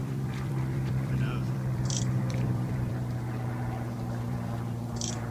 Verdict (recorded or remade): remade